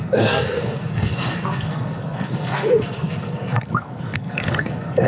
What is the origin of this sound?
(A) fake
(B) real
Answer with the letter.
A